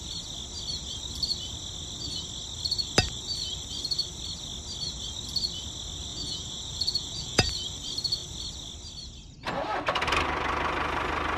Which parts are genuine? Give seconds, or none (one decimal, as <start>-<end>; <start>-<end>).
0.0-6.1; 7.5-11.4